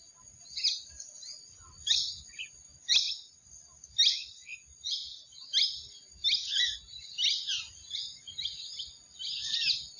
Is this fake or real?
real